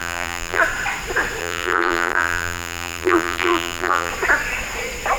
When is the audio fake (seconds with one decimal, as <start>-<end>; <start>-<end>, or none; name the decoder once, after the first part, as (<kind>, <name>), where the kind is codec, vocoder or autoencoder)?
0.0-0.6 (vocoder, BigVGAN v2); 1.4-4.1